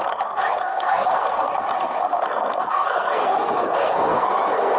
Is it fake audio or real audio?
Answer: fake